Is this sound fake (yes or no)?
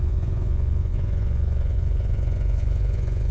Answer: yes